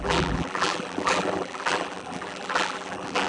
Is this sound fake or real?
fake